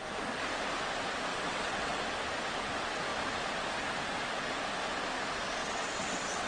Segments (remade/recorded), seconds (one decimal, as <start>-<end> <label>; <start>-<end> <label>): 0.0-1.3 recorded; 1.3-2.0 remade; 2.0-5.6 recorded; 5.6-6.5 remade